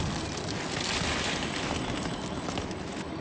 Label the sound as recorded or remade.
recorded